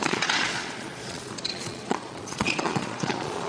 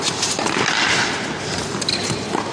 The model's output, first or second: first